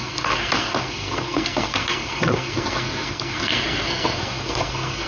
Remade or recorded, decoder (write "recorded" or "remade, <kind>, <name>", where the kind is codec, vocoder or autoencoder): remade, codec, SNAC